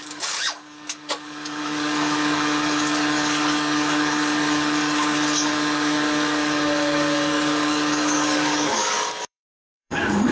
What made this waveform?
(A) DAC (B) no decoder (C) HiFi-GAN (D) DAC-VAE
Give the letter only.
A